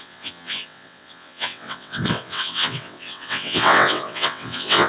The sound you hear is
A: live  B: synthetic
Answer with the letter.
B